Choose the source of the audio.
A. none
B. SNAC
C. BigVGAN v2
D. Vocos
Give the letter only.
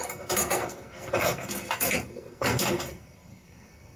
B